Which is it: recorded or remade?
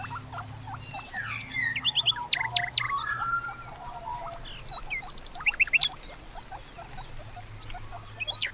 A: recorded